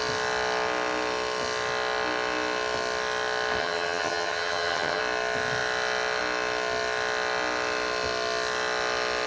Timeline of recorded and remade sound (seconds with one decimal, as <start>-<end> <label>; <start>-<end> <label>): 0.0-3.6 recorded; 3.6-5.0 remade; 5.0-9.3 recorded